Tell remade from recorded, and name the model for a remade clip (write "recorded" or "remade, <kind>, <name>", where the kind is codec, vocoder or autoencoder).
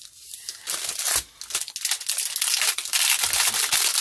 recorded